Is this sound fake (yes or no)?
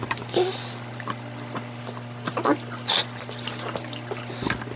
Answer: no